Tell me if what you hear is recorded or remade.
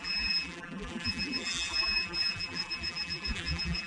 remade